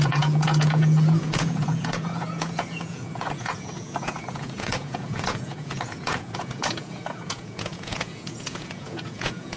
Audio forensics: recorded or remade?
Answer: remade